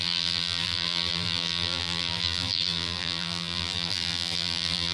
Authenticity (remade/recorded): remade